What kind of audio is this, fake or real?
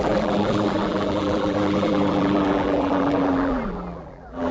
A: fake